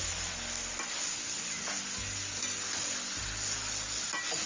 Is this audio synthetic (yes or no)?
no